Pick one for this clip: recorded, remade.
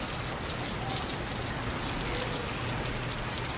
recorded